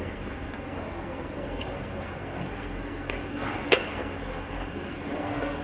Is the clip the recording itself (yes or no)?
no